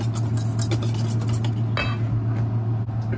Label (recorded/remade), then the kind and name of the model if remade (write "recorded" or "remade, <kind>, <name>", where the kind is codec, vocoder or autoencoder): recorded